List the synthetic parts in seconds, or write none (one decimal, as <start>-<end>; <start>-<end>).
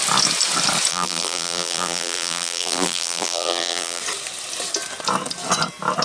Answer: 0.9-4.0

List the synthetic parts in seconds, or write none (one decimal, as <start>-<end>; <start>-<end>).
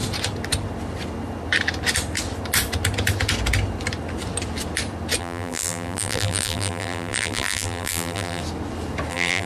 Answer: 5.2-8.4; 9.1-9.5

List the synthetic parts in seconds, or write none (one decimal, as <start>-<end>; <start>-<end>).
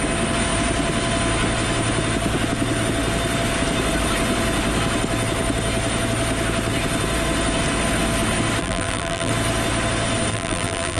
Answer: 8.6-9.3; 10.3-11.0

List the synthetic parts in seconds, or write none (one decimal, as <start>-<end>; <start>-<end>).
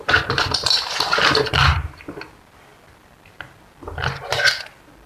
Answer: 0.0-1.6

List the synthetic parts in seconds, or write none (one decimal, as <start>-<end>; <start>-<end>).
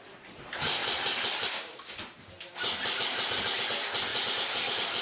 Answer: none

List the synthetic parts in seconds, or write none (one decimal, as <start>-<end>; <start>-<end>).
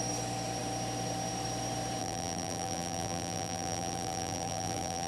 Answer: 2.0-5.1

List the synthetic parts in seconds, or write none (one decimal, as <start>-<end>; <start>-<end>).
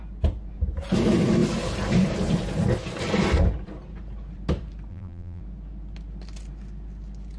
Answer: 4.9-5.4